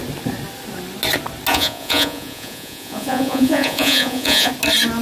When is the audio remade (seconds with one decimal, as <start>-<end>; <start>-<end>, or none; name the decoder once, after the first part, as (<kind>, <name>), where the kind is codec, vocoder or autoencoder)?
1.5-4.5 (vocoder, Vocos)